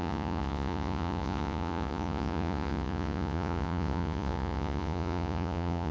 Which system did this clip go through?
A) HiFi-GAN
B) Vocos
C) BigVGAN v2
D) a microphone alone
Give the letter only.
B